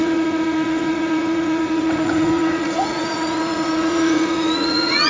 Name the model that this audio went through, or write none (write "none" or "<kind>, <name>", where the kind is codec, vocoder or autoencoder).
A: vocoder, Vocos